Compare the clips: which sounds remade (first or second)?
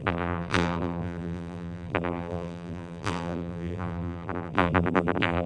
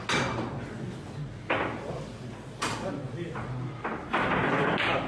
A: first